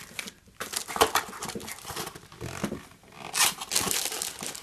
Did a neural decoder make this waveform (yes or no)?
no